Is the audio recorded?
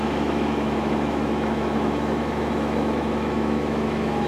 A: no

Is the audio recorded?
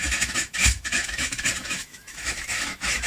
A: no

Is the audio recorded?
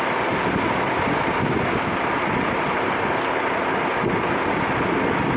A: yes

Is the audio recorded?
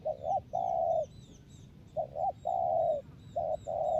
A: yes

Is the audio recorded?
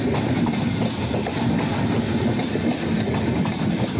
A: yes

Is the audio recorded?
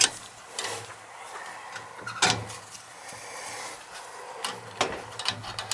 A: yes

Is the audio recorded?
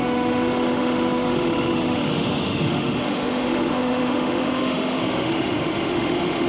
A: no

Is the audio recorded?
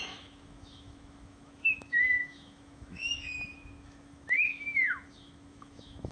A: no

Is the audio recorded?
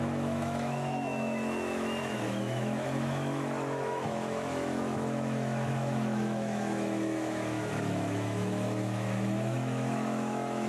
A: no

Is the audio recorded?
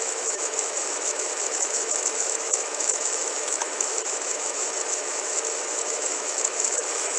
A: no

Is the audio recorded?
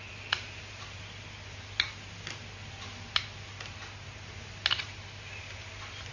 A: yes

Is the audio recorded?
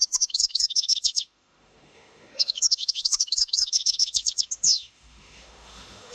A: no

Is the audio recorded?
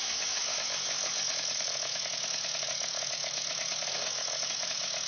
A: no